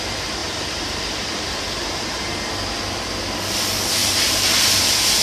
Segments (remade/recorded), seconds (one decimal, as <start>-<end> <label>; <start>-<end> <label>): 0.0-0.4 recorded; 0.4-2.2 remade; 2.2-4.0 recorded; 4.0-4.8 remade; 4.8-5.2 recorded